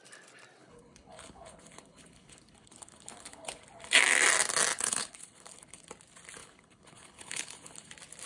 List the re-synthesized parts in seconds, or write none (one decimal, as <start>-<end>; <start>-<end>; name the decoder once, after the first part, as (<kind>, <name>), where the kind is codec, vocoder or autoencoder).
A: 0.6-3.6 (codec, HILCodec); 4.7-5.8; 6.4-7.9